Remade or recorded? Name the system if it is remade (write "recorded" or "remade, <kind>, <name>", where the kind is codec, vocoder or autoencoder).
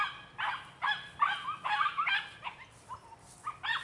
recorded